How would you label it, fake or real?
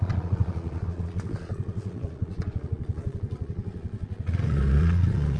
fake